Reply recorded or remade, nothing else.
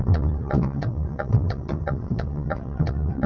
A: remade